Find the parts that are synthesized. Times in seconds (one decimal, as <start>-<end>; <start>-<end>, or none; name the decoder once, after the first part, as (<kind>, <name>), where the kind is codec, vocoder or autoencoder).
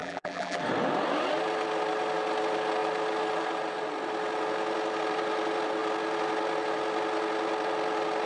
0.0-0.6 (vocoder, BigVGAN v2)